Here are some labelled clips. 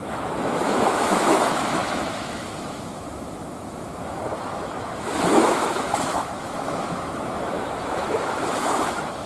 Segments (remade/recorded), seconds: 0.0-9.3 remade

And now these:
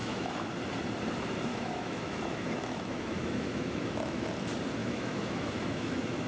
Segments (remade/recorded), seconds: 0.0-0.5 remade; 0.5-1.5 recorded; 1.5-4.3 remade; 4.3-4.8 recorded; 4.8-6.3 remade

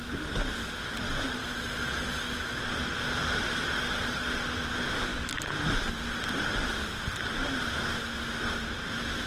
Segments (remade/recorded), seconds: 0.0-1.4 recorded; 1.4-2.6 remade; 2.6-9.3 recorded

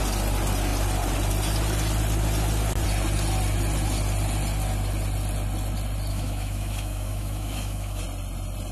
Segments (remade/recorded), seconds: 0.0-6.1 recorded; 6.1-8.0 remade; 8.0-8.7 recorded

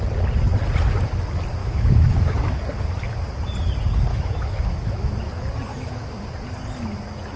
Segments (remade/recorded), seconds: 0.0-1.6 recorded; 1.6-2.5 remade; 2.5-4.1 recorded; 4.1-5.2 remade; 5.2-5.7 recorded; 5.7-6.2 remade; 6.2-7.4 recorded

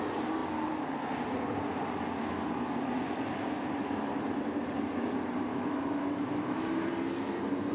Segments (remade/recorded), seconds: 0.0-5.5 recorded; 5.5-6.9 remade; 6.9-7.7 recorded

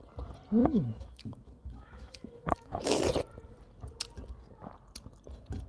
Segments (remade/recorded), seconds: 0.0-0.6 recorded; 0.6-3.0 remade; 3.0-5.7 recorded

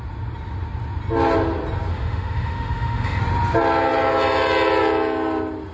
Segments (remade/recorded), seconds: 0.0-1.9 recorded; 1.9-3.2 remade; 3.2-5.7 recorded